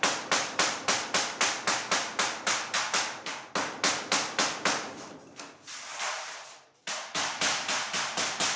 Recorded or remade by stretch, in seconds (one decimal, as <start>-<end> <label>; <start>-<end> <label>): 0.0-2.1 remade; 2.1-5.9 recorded; 5.9-8.6 remade